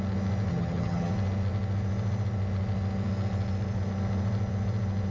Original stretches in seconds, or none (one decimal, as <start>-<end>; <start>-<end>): 0.0-0.5; 1.1-5.1